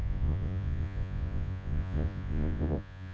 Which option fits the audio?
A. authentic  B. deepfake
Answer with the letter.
B